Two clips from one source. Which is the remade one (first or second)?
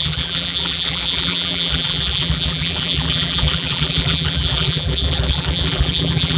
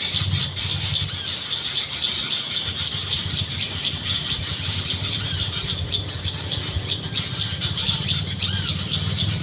first